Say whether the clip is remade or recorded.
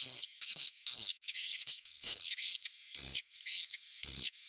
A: remade